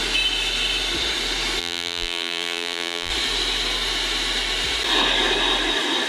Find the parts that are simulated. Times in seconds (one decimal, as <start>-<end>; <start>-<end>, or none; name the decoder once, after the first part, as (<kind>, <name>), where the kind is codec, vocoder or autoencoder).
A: 1.6-3.1 (vocoder, BigVGAN v2)